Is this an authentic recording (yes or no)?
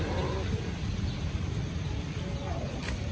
yes